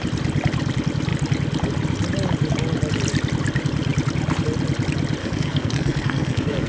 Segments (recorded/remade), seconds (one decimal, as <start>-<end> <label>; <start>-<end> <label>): 0.0-5.2 recorded; 5.2-6.7 remade